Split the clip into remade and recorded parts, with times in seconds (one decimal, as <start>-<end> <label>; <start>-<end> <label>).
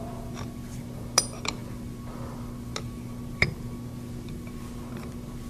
0.0-5.5 recorded